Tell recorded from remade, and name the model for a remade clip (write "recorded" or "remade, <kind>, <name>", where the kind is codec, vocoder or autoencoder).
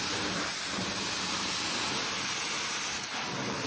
remade, vocoder, BigVGAN v2